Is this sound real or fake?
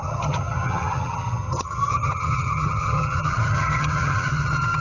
fake